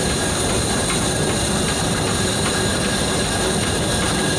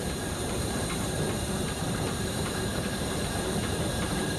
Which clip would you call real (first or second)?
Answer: first